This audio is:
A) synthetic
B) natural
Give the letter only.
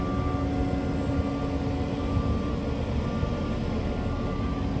B